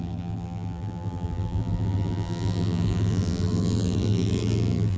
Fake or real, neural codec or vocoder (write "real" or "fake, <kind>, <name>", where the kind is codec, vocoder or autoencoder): fake, vocoder, BigVGAN v2